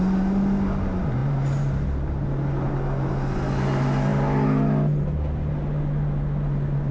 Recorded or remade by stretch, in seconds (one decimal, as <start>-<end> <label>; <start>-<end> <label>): 0.0-6.9 recorded